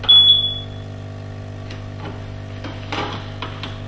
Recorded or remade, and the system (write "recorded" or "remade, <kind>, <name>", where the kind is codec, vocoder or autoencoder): recorded